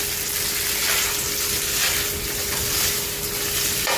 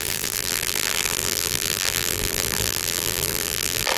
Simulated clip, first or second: second